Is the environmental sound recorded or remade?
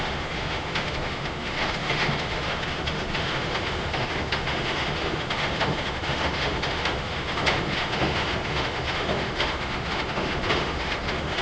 remade